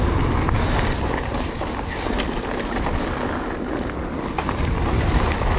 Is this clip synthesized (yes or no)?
no